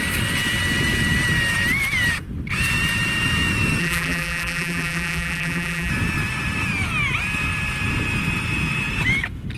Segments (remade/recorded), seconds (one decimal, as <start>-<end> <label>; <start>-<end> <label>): 0.0-3.8 recorded; 3.8-5.9 remade; 5.9-9.6 recorded